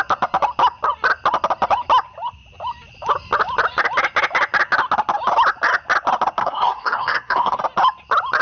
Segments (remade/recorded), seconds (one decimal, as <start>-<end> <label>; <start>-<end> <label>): 0.0-6.4 recorded; 6.4-7.6 remade; 7.6-8.4 recorded